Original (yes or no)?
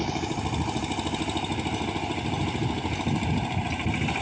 yes